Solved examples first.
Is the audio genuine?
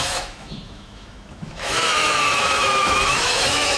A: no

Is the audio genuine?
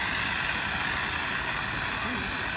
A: yes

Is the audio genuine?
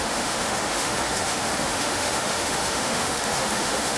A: no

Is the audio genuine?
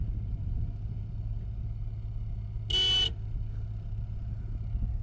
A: yes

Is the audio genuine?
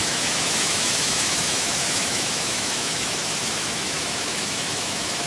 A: no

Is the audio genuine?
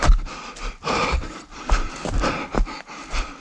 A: yes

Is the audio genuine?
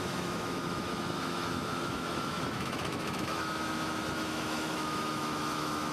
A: no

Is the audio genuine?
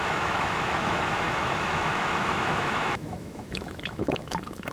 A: no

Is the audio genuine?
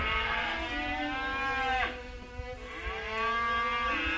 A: yes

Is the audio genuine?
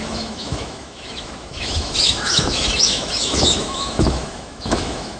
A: no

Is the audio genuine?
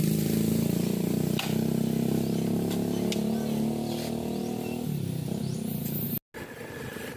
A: yes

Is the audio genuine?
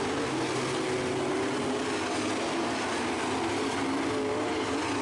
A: yes